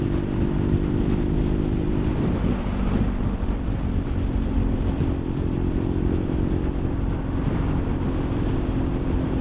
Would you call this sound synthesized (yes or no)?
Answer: yes